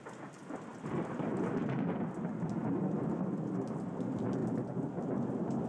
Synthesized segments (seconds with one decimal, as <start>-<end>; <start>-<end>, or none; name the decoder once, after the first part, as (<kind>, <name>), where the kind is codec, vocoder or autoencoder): none